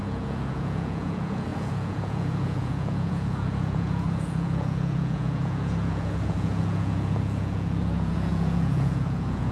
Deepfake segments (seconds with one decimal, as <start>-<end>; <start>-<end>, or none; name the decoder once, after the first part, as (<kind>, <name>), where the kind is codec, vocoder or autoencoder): 0.0-9.5 (vocoder, Vocos)